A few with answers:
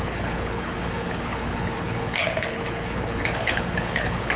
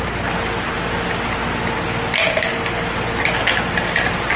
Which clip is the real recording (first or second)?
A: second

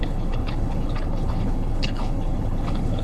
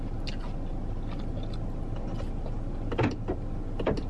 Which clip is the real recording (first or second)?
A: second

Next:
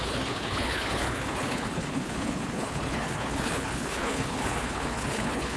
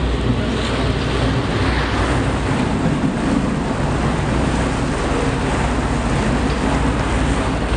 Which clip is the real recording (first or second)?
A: second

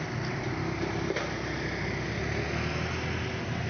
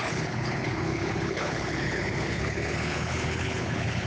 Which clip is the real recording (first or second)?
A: first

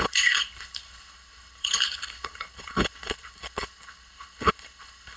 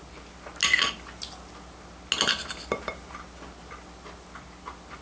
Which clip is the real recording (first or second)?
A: second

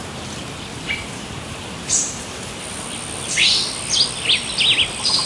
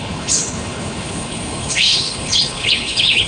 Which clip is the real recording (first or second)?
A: first